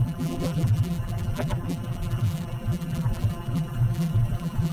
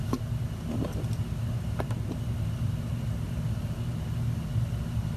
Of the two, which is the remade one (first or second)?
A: first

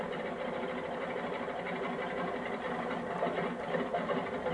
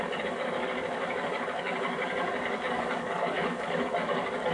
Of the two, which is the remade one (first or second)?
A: second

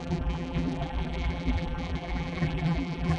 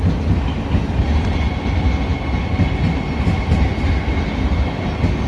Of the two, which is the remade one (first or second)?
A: first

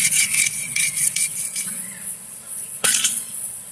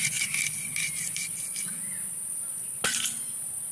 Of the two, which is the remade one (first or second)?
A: first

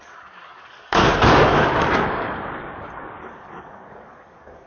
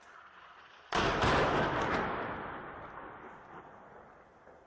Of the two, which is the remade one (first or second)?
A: first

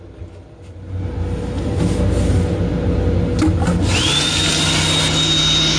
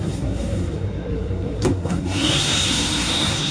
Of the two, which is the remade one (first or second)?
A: second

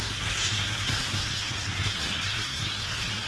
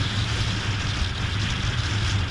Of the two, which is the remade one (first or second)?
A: first